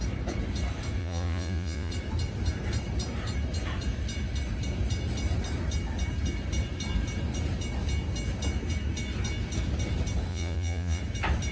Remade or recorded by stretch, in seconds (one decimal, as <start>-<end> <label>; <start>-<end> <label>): 0.0-1.0 recorded; 1.0-1.9 remade; 1.9-10.3 recorded; 10.3-11.0 remade; 11.0-11.5 recorded